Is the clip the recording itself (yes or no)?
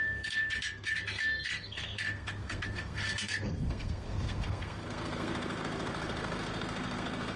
no